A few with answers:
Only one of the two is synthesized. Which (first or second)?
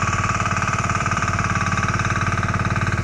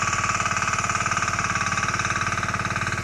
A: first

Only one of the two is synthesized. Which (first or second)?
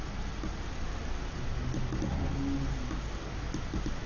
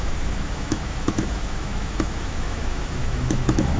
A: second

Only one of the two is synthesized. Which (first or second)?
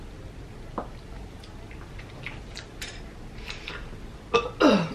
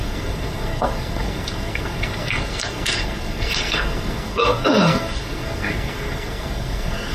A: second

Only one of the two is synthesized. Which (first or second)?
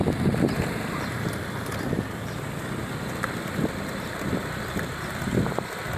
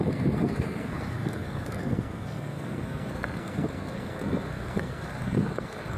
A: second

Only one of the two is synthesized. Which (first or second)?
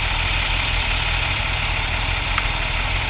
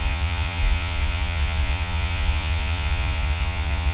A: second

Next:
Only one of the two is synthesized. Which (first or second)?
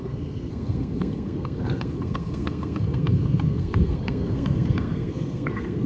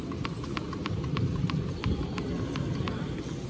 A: first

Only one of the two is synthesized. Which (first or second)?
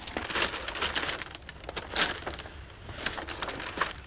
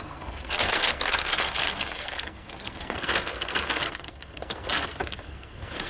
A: second